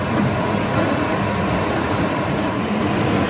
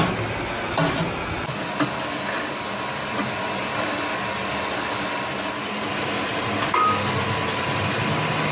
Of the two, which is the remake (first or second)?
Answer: first